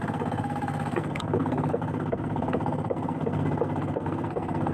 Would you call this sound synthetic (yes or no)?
yes